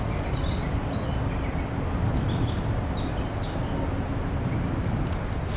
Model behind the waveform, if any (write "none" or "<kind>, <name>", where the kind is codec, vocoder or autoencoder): none